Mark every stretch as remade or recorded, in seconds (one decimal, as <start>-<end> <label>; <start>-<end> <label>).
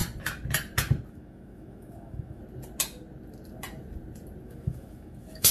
0.0-1.1 recorded; 1.1-2.4 remade; 2.4-4.4 recorded; 4.4-5.5 remade